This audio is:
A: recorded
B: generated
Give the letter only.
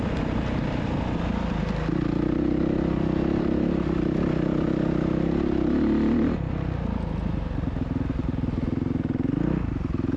A